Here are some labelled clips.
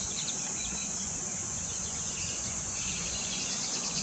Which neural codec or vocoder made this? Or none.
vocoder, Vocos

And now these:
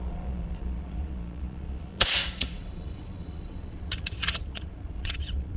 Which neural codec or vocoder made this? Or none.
vocoder, Vocos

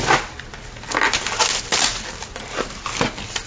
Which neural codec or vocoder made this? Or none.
none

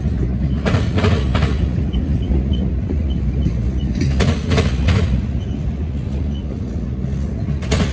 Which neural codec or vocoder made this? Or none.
vocoder, Vocos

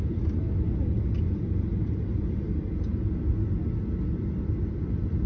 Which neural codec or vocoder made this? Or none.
none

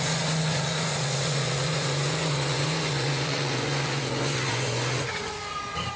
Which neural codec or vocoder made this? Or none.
vocoder, Vocos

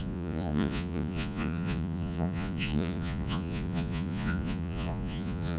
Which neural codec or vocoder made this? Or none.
vocoder, Vocos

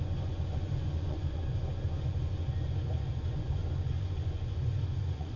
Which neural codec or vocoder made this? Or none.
vocoder, Vocos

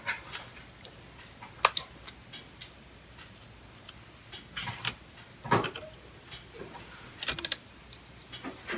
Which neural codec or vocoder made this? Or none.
none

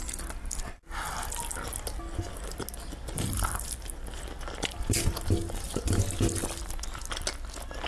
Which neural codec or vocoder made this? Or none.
none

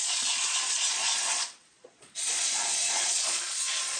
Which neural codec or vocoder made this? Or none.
vocoder, Vocos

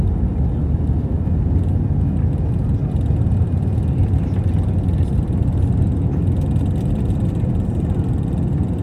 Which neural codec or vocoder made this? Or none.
none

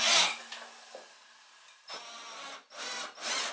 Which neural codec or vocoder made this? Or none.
none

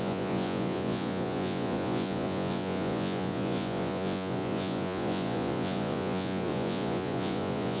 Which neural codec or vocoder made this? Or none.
vocoder, Vocos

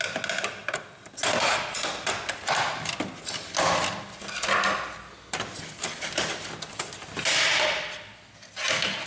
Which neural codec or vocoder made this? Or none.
none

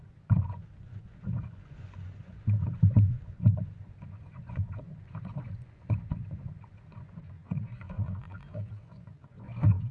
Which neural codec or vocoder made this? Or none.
vocoder, Vocos